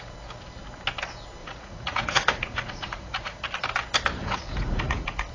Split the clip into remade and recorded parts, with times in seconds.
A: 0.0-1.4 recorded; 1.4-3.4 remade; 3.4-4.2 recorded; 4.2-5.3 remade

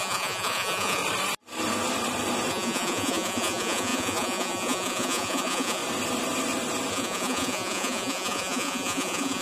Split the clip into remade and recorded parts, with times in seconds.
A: 0.0-1.0 remade; 1.0-2.5 recorded; 2.5-5.8 remade; 5.8-6.9 recorded; 6.9-9.4 remade

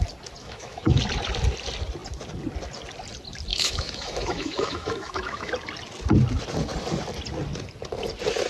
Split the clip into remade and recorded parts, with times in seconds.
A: 0.0-0.4 recorded; 0.4-1.0 remade; 1.0-3.5 recorded; 3.5-5.5 remade; 5.5-8.5 recorded

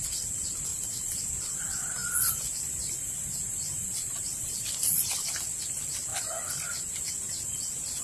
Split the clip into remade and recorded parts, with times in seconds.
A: 0.0-0.7 recorded; 0.7-1.2 remade; 1.2-2.0 recorded; 2.0-4.7 remade; 4.7-8.0 recorded

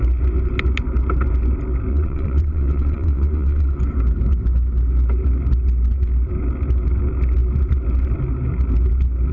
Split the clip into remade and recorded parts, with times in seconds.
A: 0.0-1.9 recorded; 1.9-3.8 remade; 3.8-9.3 recorded

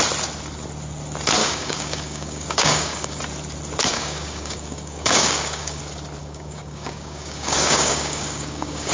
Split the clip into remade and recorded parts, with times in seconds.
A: 0.0-1.4 recorded; 1.4-3.2 remade; 3.2-3.9 recorded; 3.9-5.8 remade; 5.8-6.2 recorded; 6.2-8.9 remade